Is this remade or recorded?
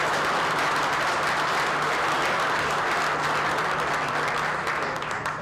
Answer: recorded